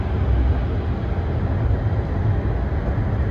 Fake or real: real